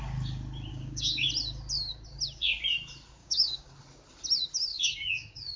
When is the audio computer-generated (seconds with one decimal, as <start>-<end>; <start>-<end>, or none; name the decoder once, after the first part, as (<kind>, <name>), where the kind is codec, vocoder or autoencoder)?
0.7-1.3 (codec, DAC); 3.2-3.7; 4.7-5.6